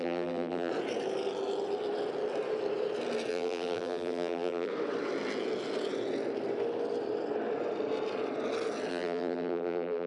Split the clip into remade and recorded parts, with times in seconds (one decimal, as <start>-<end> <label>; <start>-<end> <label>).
0.0-0.7 remade; 0.7-3.3 recorded; 3.3-4.7 remade; 4.7-8.9 recorded; 8.9-10.1 remade